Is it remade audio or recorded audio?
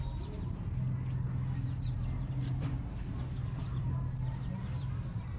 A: recorded